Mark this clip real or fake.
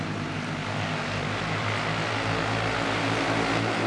real